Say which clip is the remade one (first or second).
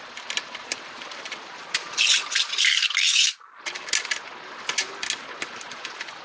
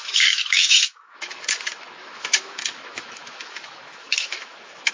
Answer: second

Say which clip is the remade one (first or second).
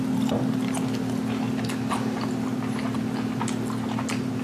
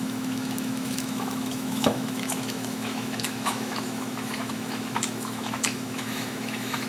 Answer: second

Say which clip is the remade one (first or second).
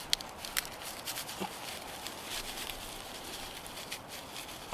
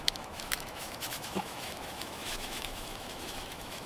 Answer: second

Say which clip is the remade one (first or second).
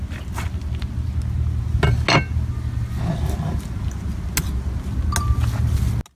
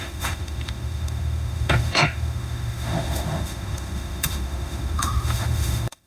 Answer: second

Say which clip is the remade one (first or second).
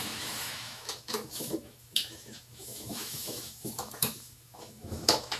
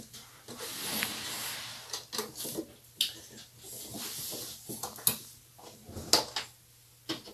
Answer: first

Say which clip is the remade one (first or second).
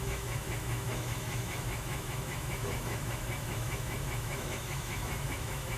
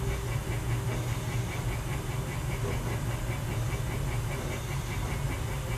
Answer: first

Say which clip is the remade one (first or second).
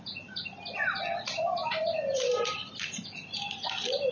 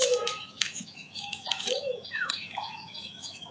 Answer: second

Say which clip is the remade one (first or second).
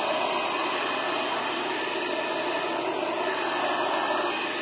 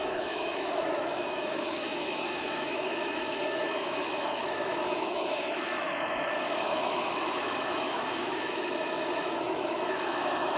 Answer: second